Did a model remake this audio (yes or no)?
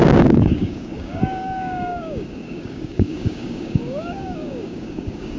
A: yes